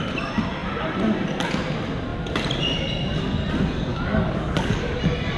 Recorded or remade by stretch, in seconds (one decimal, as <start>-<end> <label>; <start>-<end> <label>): 0.0-3.9 recorded; 3.9-4.9 remade; 4.9-5.4 recorded